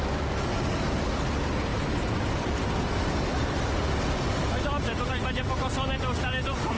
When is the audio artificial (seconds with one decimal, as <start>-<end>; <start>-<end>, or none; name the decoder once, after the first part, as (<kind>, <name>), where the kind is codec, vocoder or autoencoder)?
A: 1.7-5.1 (vocoder, BigVGAN v2)